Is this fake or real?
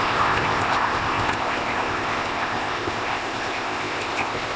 fake